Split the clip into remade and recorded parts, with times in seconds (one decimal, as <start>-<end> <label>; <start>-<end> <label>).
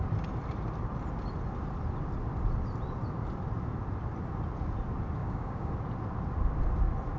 0.0-5.2 recorded; 5.2-5.7 remade; 5.7-7.2 recorded